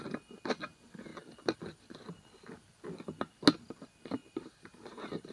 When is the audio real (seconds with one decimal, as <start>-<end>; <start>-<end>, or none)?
0.0-4.2